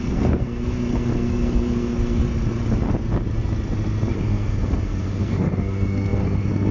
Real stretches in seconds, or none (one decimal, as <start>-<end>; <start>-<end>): 2.2-4.1